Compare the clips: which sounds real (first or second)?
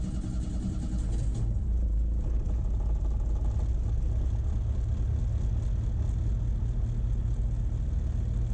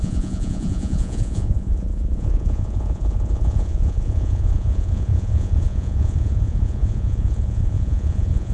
first